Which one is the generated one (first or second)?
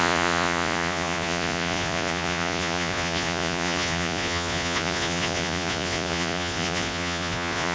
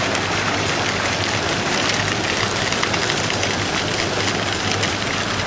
first